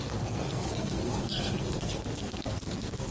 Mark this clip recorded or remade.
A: remade